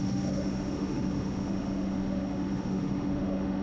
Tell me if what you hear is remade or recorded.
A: remade